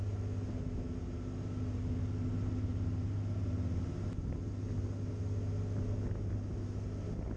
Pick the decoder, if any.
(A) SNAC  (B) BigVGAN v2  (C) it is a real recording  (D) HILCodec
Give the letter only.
C